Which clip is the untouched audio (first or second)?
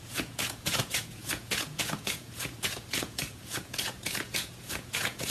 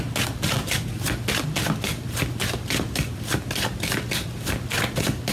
second